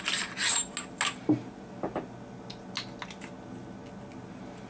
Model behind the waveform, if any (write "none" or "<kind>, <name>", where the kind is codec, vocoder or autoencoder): none